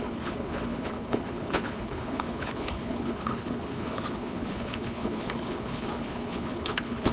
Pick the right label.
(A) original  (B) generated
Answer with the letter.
B